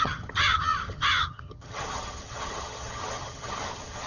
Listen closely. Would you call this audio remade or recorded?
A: remade